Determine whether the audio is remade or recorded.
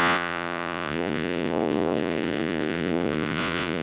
remade